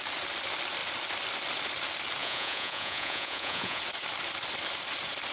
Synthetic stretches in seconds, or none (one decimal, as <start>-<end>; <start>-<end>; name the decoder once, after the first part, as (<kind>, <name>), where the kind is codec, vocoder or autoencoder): 2.2-3.8 (vocoder, Vocos)